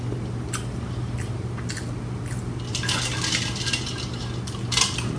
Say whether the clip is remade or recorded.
recorded